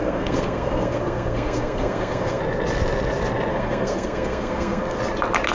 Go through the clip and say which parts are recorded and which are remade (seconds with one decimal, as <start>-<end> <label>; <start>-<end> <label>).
0.0-2.4 remade; 2.4-3.5 recorded; 3.5-5.0 remade; 5.0-5.5 recorded